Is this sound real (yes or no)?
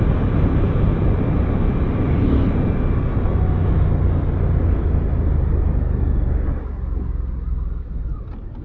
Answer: yes